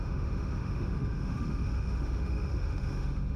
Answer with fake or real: fake